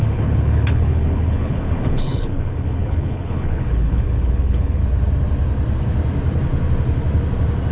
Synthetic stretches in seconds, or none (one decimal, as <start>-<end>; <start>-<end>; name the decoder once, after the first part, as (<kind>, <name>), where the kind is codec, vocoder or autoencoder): 0.0-4.8 (codec, HILCodec)